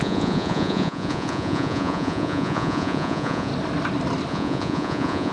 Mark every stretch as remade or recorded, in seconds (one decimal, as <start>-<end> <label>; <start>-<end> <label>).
0.0-3.5 remade; 3.5-4.3 recorded; 4.3-5.3 remade